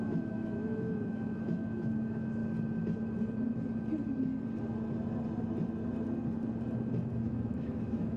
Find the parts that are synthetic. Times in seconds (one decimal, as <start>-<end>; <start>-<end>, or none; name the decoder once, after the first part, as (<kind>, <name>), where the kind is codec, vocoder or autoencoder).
0.0-2.4 (autoencoder, DAC-VAE); 7.1-8.2